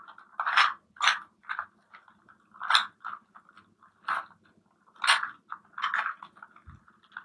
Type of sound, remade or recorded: recorded